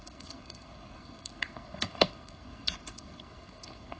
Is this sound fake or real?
fake